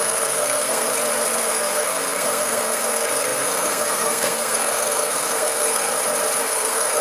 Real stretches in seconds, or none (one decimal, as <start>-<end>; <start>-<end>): 0.9-1.4; 5.9-6.4